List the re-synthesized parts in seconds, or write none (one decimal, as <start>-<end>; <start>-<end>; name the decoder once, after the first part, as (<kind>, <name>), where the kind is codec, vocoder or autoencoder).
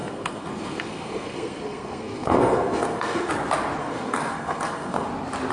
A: 0.0-3.3 (codec, SNAC); 3.8-5.1